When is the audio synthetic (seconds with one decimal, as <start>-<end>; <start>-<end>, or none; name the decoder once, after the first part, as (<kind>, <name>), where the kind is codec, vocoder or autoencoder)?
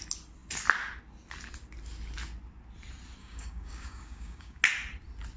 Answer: 3.2-4.6 (codec, DAC)